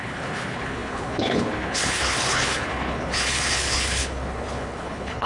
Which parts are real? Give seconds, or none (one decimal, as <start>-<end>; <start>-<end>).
none